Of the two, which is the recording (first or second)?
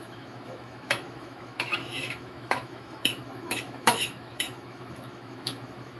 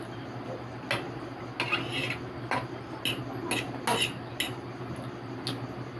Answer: second